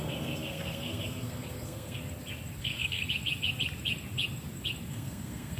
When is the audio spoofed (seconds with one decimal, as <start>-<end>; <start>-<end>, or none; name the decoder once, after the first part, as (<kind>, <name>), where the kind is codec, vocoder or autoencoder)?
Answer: 0.0-2.0 (codec, SNAC); 2.6-3.0; 4.9-5.6